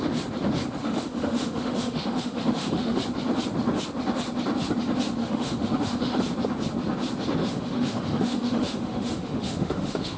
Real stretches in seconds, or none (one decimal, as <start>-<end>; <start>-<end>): 0.0-0.8; 3.0-5.2; 6.2-7.4